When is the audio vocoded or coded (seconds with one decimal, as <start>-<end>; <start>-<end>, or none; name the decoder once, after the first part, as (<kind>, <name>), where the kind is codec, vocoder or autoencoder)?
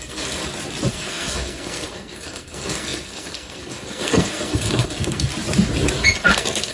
0.0-0.4 (codec, SNAC); 0.9-5.3; 6.3-6.7